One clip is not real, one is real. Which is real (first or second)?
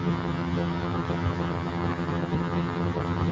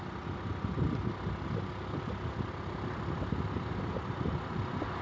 second